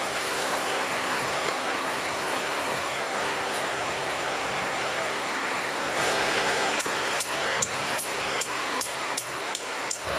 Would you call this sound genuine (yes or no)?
no